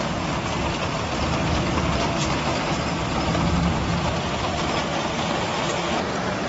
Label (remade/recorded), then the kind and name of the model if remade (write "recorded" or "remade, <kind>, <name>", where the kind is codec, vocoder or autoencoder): remade, vocoder, BigVGAN v2